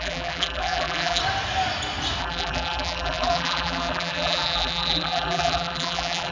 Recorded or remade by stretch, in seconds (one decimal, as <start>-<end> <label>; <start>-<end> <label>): 0.0-1.2 remade; 1.2-2.2 recorded; 2.2-6.3 remade